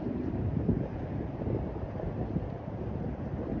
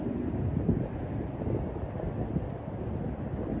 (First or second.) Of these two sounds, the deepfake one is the first